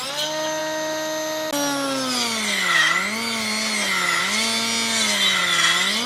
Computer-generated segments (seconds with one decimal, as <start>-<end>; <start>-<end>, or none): none